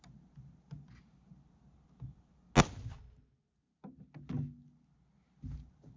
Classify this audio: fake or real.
real